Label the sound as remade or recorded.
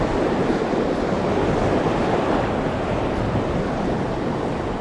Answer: recorded